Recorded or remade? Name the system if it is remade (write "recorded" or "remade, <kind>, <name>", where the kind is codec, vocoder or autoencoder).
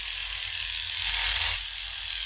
recorded